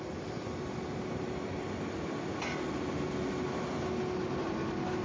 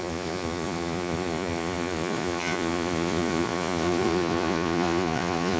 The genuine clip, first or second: first